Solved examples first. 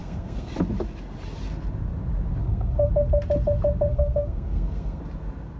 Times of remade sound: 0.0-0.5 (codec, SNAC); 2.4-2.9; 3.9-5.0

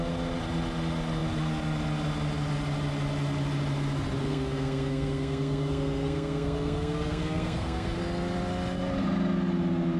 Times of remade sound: 4.2-8.0 (codec, SNAC)

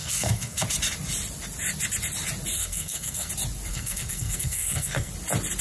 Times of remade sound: 0.0-0.6 (codec, SNAC); 2.6-3.3; 3.7-5.1

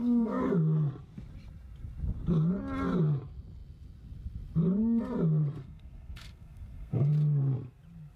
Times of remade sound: 0.0-0.5 (codec, SNAC); 5.6-7.1